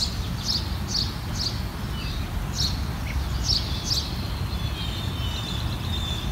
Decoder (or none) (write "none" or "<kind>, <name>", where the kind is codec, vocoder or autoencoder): none